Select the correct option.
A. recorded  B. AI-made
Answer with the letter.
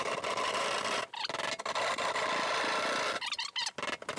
A